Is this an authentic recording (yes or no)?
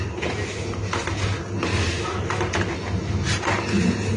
yes